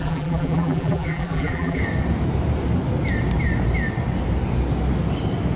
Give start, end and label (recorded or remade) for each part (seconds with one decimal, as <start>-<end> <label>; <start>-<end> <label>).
0.0-1.8 remade; 1.8-5.6 recorded